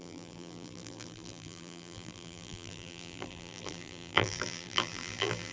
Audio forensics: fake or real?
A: fake